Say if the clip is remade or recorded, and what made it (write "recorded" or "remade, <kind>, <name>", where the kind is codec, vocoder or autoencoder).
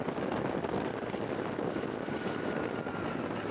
recorded